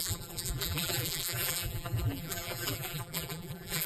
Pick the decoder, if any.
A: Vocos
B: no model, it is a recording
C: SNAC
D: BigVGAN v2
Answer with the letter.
D